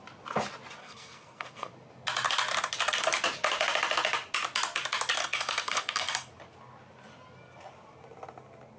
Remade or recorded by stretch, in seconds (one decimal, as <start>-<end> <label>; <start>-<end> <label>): 0.0-0.8 recorded; 0.8-1.7 remade; 1.7-5.2 recorded; 5.2-6.3 remade; 6.3-8.8 recorded